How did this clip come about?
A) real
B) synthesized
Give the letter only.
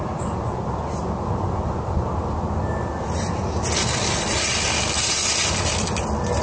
A